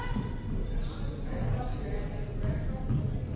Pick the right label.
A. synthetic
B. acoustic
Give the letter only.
B